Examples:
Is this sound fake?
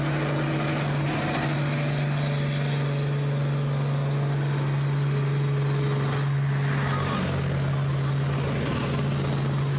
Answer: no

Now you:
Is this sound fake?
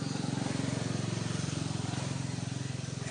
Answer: no